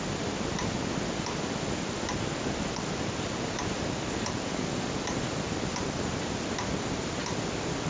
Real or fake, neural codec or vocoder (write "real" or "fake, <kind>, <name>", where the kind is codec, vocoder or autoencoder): real